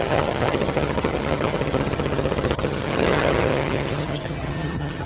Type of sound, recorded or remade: remade